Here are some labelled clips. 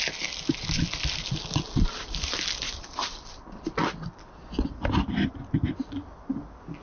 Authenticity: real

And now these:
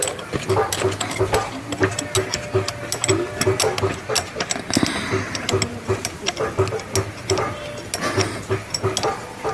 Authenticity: real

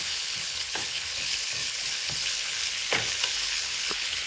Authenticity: fake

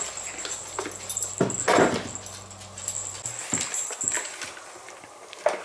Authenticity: real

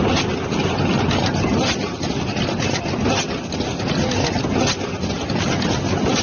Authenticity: real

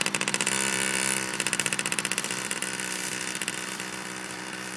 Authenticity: fake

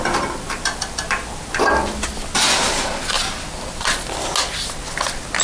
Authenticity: real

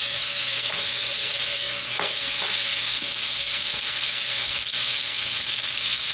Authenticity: fake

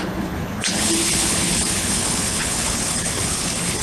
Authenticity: fake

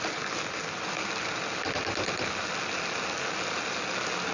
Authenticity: real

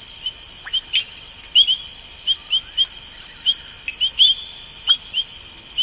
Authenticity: real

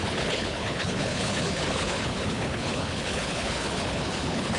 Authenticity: fake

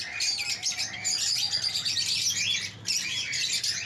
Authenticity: real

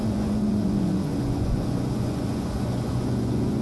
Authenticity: fake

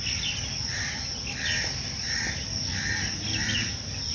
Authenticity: real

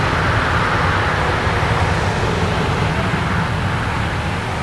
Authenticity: real